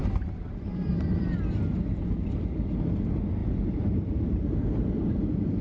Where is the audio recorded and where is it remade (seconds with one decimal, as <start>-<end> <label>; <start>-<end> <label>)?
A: 0.0-1.2 remade; 1.2-3.4 recorded; 3.4-4.6 remade; 4.6-5.6 recorded